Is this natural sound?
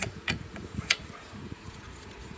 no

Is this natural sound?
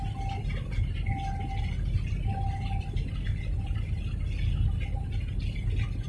yes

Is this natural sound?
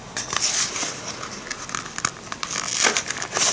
yes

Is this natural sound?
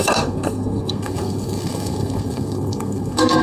no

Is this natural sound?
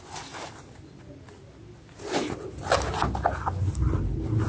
yes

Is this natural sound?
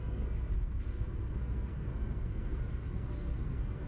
no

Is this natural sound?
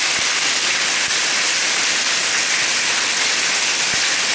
yes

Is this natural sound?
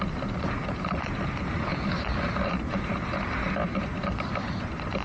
yes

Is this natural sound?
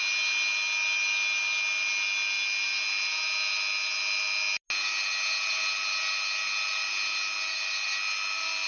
yes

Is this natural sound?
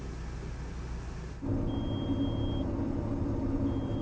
yes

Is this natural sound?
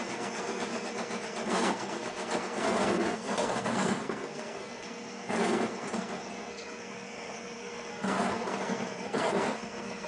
no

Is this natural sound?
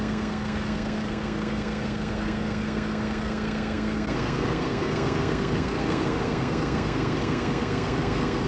no